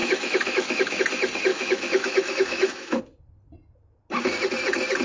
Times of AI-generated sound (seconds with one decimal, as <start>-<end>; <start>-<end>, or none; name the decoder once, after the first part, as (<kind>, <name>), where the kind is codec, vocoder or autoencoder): 0.0-1.0 (autoencoder, DAC-VAE); 1.5-3.0